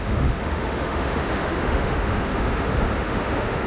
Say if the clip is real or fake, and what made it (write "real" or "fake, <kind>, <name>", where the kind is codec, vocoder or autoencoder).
fake, autoencoder, DAC-VAE